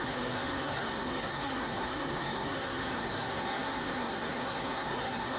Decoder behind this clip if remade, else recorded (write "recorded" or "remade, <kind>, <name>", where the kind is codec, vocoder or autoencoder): remade, codec, SNAC